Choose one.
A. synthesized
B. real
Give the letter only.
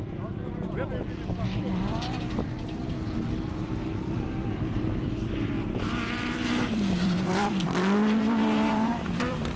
A